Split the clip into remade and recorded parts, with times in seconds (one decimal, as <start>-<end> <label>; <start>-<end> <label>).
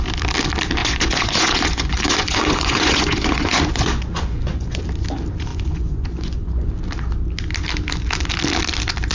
0.0-0.8 recorded; 0.8-4.8 remade; 4.8-5.5 recorded; 5.5-6.7 remade; 6.7-9.1 recorded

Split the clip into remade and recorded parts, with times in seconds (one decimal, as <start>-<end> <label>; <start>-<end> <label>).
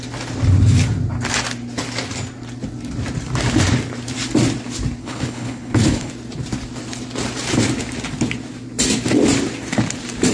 0.0-5.0 recorded; 5.0-6.1 remade; 6.1-10.3 recorded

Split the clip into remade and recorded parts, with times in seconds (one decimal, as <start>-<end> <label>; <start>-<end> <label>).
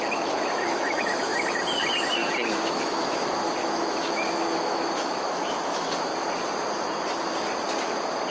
0.0-1.3 remade; 1.3-2.5 recorded; 2.5-6.1 remade; 6.1-8.3 recorded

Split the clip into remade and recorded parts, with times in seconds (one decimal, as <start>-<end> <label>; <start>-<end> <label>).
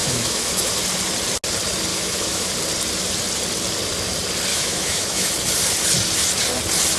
0.0-0.7 remade; 0.7-1.9 recorded; 1.9-2.5 remade; 2.5-4.5 recorded; 4.5-5.3 remade; 5.3-7.0 recorded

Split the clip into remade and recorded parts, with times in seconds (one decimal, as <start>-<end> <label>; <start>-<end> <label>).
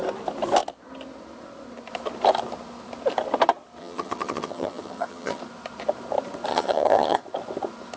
0.0-3.8 recorded; 3.8-5.4 remade; 5.4-6.5 recorded; 6.5-7.2 remade; 7.2-8.0 recorded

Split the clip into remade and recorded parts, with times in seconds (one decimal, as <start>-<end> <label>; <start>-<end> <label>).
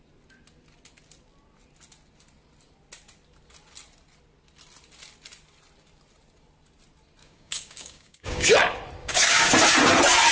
0.0-7.2 recorded; 7.2-8.5 remade; 8.5-9.0 recorded; 9.0-9.5 remade; 9.5-10.3 recorded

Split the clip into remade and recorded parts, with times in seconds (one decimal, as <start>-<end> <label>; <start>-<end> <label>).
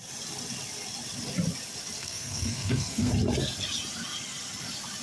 0.0-2.0 recorded; 2.0-3.1 remade; 3.1-5.0 recorded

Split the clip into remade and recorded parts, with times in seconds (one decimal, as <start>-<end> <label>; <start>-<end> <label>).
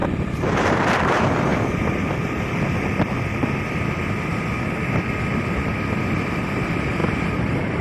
0.0-1.5 remade; 1.5-6.2 recorded; 6.2-7.8 remade